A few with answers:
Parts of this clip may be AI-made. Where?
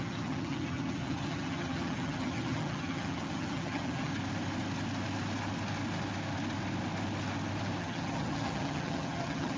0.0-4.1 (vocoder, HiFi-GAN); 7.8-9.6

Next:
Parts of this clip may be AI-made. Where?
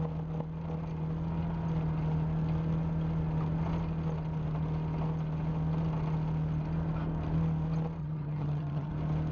8.0-8.9 (vocoder, HiFi-GAN)